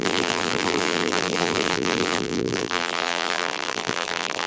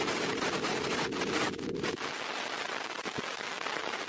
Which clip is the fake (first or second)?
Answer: first